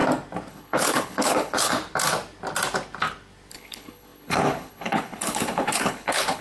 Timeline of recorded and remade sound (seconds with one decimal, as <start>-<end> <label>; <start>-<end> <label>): 0.0-0.5 recorded; 0.5-1.8 remade; 1.8-3.5 recorded; 3.5-6.4 remade